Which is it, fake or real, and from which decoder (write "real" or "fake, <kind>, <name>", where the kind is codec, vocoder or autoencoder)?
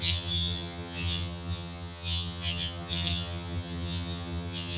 fake, vocoder, HiFi-GAN